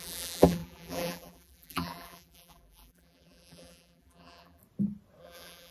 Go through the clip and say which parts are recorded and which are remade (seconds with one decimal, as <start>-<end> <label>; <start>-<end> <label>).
0.0-4.6 remade; 4.6-5.2 recorded; 5.2-5.7 remade